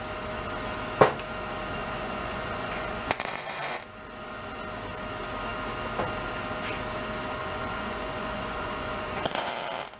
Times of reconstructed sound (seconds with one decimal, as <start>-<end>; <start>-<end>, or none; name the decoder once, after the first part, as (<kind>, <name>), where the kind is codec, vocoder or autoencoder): 1.8-3.8 (vocoder, Vocos); 7.4-9.5